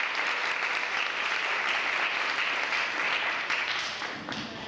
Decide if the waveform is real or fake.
real